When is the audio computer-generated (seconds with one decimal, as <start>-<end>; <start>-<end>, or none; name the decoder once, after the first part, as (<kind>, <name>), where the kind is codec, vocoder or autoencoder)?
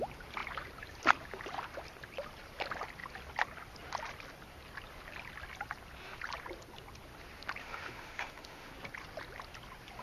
7.6-8.7 (autoencoder, DAC-VAE)